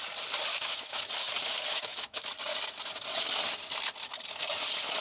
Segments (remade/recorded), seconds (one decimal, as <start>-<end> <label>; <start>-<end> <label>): 0.0-0.5 recorded; 0.5-1.1 remade; 1.1-1.7 recorded; 1.7-2.3 remade; 2.3-5.0 recorded